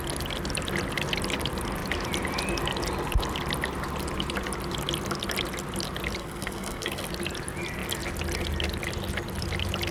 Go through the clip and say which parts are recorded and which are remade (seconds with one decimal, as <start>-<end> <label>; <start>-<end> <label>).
0.0-6.2 recorded; 6.2-7.1 remade; 7.1-9.9 recorded